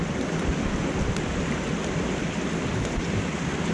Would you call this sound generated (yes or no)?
no